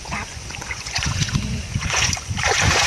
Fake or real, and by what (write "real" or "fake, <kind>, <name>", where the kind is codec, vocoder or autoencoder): fake, vocoder, Vocos